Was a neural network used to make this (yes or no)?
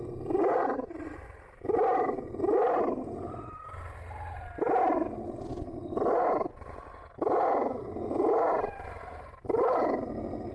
no